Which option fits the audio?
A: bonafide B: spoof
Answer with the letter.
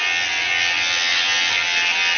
A